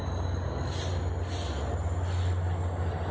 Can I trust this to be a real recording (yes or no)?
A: yes